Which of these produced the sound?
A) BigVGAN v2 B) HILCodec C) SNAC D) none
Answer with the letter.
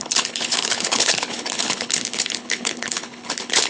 B